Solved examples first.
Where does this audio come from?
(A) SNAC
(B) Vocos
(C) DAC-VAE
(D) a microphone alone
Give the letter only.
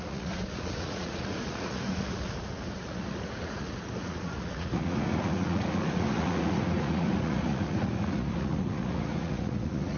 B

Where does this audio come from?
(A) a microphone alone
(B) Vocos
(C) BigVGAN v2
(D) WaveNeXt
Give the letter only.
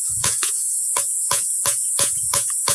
B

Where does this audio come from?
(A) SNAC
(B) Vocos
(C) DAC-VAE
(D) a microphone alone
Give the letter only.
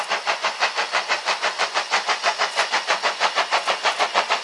B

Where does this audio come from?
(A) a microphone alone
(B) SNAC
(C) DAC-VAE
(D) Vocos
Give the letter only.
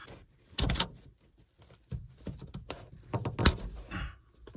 A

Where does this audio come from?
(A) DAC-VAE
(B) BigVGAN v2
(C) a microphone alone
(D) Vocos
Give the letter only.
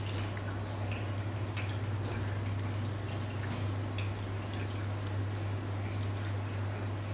C